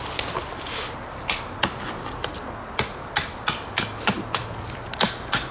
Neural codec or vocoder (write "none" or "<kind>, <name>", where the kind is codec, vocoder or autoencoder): none